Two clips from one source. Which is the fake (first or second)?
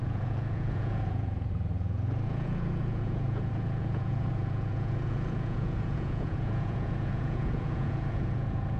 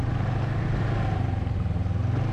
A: first